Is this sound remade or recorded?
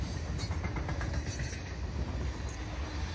recorded